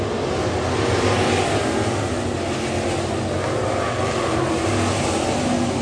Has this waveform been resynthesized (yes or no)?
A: no